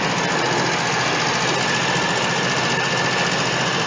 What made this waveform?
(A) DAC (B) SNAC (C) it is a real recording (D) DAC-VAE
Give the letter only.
C